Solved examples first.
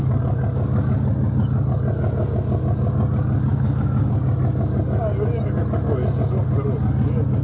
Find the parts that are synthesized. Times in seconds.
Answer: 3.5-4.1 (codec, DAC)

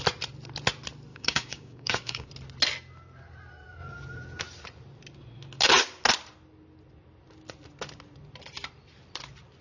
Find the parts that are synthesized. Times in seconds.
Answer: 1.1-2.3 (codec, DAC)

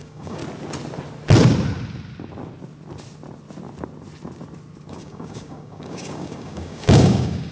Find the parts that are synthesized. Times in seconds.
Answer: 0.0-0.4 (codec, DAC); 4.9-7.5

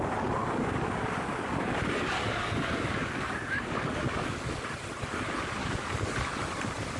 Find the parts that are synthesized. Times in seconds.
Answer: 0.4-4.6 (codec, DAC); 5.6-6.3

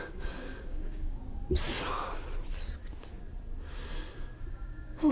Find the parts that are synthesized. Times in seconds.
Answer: 0.0-1.4 (codec, DAC); 4.5-5.1

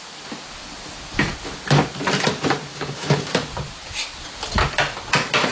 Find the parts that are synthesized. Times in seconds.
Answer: 2.7-3.2 (codec, DAC)

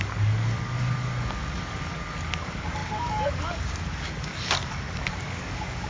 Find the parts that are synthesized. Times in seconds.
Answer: 0.0-5.9 (codec, DAC)